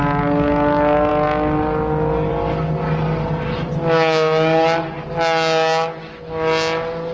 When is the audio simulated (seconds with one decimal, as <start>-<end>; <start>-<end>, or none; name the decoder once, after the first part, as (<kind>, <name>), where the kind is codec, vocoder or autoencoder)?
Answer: none